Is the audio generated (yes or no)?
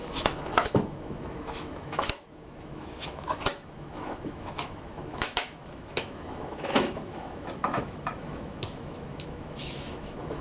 yes